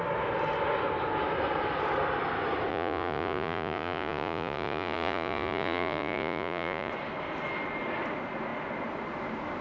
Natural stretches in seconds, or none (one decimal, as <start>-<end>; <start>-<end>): 0.0-2.7; 6.9-9.6

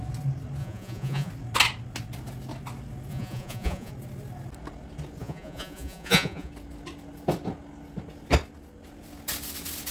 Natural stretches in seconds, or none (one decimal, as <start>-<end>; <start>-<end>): 0.0-0.6; 1.3-3.1; 3.9-5.2; 6.5-9.9

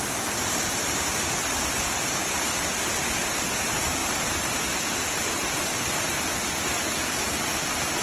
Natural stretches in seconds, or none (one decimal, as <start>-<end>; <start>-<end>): 0.0-8.0

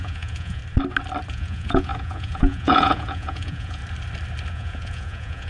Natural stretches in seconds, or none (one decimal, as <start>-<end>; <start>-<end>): 0.6-1.3; 3.8-4.5

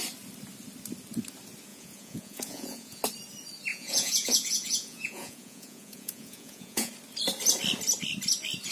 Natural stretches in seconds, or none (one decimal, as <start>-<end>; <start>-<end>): 0.0-1.7; 3.0-3.7; 6.9-8.7